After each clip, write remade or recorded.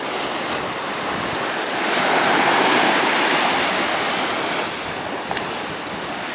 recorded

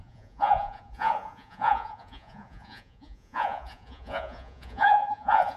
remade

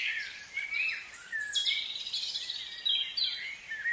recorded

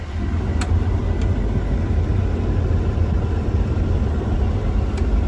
recorded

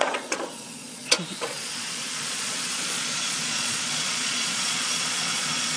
remade